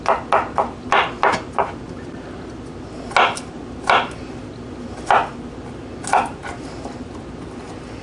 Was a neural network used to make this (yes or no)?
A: no